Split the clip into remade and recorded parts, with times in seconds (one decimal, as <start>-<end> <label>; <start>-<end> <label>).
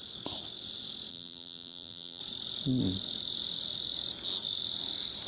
0.0-1.1 recorded; 1.1-2.2 remade; 2.2-5.3 recorded